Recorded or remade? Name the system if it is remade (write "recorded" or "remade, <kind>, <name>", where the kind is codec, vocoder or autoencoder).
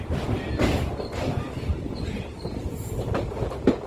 recorded